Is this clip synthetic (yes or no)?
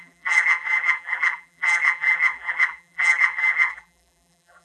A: yes